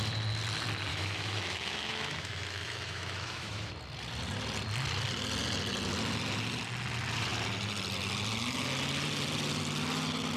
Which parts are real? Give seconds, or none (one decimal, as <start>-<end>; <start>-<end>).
0.0-0.9; 3.7-10.4